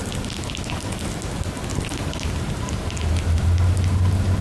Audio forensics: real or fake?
real